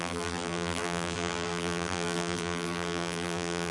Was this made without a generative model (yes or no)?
no